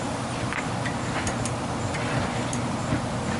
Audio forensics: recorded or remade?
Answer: recorded